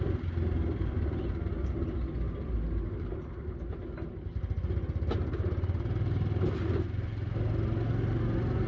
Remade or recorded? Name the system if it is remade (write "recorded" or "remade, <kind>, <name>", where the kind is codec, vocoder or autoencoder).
recorded